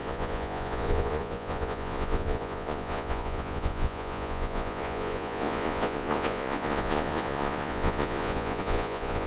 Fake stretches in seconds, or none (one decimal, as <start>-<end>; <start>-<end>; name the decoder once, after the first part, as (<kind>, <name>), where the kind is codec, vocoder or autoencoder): 0.0-9.3 (vocoder, Vocos)

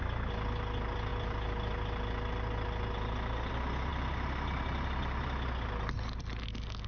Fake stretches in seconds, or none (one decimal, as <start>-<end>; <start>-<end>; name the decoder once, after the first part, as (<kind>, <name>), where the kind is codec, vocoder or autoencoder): none

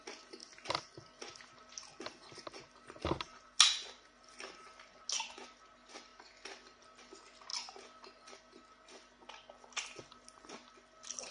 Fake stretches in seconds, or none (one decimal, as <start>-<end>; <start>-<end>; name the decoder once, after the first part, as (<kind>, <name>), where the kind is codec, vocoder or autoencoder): none

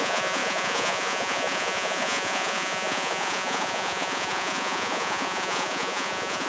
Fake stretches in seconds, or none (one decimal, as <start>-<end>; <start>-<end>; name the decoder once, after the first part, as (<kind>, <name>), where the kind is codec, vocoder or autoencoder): 0.0-6.5 (vocoder, Vocos)

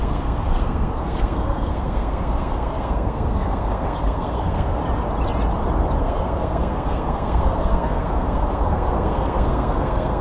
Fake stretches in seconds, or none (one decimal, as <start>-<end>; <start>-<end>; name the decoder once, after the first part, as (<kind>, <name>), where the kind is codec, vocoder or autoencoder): 0.0-4.8 (codec, SNAC); 6.0-10.2

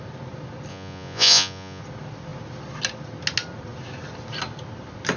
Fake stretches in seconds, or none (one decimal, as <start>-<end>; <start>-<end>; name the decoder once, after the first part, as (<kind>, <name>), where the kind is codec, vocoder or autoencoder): 0.7-1.8 (vocoder, Vocos)

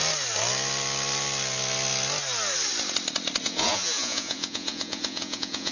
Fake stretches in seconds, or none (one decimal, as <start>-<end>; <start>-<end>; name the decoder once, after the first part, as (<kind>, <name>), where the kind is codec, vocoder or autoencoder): 3.4-5.7 (vocoder, Vocos)